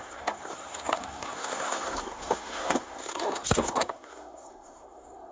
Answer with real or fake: fake